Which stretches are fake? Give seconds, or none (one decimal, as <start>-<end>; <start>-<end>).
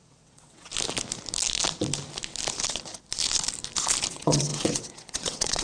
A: 0.0-0.7; 4.1-5.6